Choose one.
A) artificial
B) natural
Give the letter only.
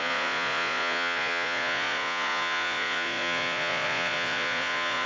A